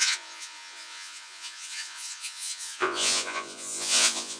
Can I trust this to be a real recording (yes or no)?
no